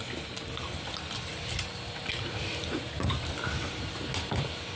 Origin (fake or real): real